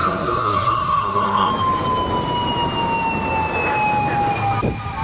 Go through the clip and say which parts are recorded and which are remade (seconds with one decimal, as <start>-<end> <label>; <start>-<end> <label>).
0.0-1.5 remade; 1.5-5.0 recorded